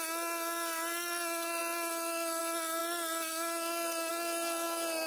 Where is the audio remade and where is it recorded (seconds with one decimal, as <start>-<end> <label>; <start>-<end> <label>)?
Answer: 0.0-5.1 recorded